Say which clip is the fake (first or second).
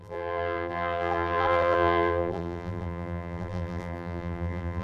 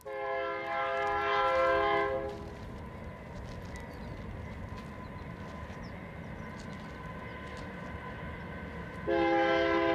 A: first